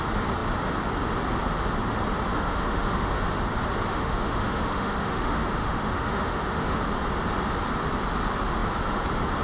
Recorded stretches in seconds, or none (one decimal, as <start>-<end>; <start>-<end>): 0.0-2.3; 3.1-3.9; 6.8-9.4